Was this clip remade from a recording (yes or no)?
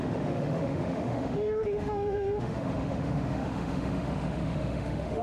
yes